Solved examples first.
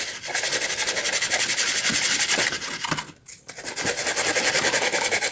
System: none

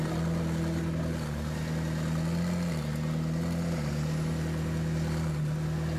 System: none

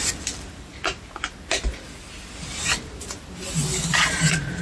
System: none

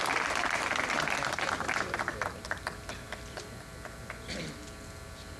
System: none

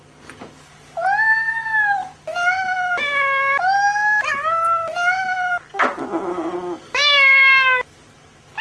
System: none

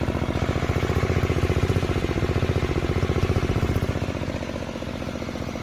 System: none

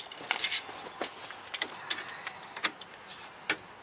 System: none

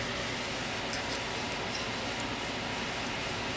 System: none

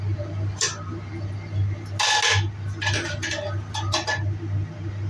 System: none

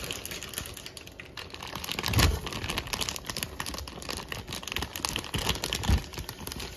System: none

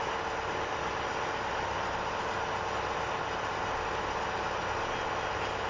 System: none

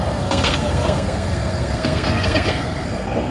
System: codec, SNAC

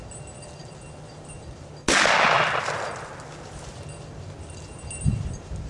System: none